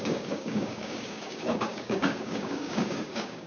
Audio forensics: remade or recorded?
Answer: remade